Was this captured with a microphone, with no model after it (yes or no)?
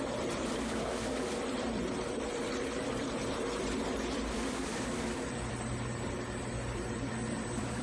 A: no